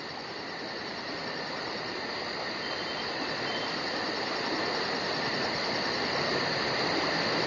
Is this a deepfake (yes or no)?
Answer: no